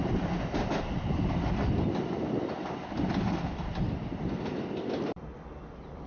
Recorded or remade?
recorded